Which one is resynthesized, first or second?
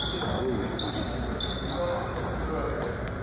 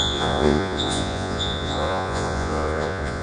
second